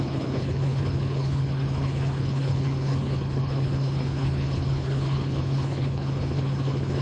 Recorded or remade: remade